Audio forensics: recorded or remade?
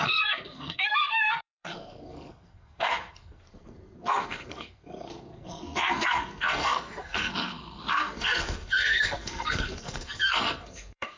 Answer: remade